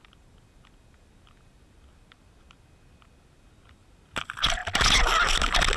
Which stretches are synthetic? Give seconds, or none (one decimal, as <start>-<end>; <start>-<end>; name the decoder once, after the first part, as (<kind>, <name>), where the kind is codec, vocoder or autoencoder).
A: none